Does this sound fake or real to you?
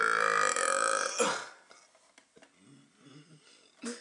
real